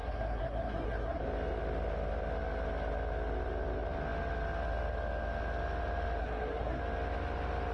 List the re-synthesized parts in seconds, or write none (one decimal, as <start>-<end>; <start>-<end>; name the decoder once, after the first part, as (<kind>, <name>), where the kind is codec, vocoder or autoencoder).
0.0-1.2 (codec, SNAC); 6.2-6.8